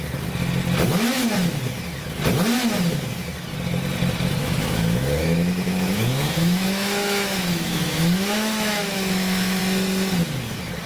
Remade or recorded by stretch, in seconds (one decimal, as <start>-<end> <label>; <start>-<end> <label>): 0.0-4.4 recorded; 4.4-9.6 remade; 9.6-10.9 recorded